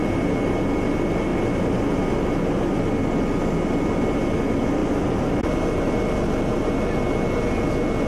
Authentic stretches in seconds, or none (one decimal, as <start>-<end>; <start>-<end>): 0.0-8.1